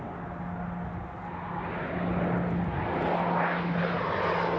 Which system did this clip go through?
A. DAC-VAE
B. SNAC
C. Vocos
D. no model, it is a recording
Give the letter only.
D